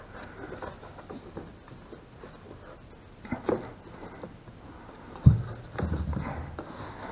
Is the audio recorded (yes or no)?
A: yes